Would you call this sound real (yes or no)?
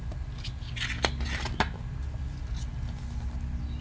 yes